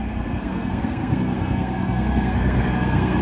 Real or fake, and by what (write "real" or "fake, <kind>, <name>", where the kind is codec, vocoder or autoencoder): fake, codec, SNAC